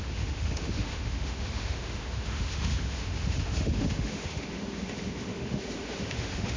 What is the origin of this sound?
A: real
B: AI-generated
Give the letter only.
B